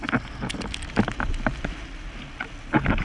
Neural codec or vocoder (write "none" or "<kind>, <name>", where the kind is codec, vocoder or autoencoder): none